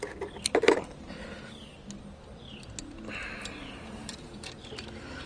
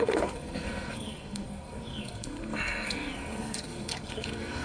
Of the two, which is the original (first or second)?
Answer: first